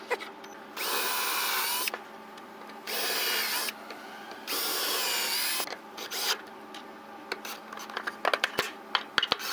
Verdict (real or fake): real